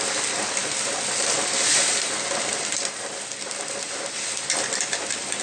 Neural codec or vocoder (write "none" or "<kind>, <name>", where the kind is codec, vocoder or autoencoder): vocoder, BigVGAN v2